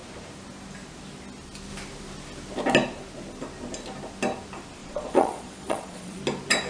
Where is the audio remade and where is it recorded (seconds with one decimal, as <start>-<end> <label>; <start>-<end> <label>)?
0.0-4.8 recorded; 4.8-6.2 remade; 6.2-6.7 recorded